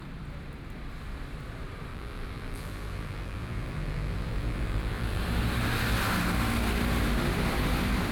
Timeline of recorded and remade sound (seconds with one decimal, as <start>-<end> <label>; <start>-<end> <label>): 0.0-1.9 recorded; 1.9-5.2 remade; 5.2-8.1 recorded